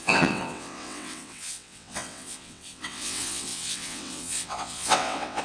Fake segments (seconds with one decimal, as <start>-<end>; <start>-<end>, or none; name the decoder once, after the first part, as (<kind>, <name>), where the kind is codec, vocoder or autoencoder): 0.0-5.4 (vocoder, WaveNeXt)

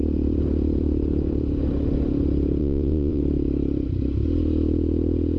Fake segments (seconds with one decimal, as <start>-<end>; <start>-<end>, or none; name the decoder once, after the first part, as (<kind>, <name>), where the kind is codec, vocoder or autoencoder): 2.6-3.2 (vocoder, Vocos)

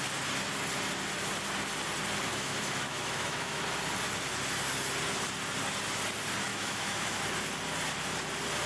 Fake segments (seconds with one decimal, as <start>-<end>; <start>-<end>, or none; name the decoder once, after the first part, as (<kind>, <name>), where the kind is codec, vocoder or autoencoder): 2.3-3.6 (autoencoder, DAC-VAE); 6.5-7.2

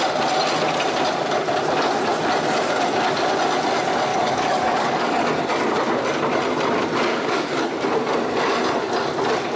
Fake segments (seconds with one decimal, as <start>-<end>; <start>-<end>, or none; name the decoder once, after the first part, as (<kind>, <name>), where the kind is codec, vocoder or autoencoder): 4.1-5.3 (codec, DAC); 7.1-7.7